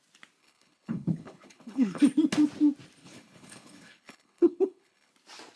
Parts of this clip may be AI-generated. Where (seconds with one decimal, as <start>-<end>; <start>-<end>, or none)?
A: 0.4-2.0; 3.0-5.1